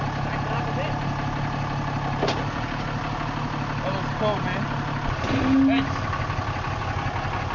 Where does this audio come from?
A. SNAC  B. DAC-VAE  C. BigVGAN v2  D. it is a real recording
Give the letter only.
D